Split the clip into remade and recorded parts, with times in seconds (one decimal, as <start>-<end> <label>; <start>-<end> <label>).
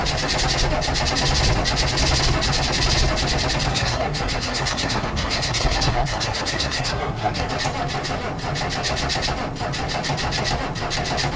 0.0-3.7 recorded; 3.7-7.5 remade; 7.5-11.4 recorded